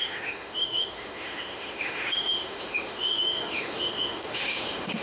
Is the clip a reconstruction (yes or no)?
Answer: yes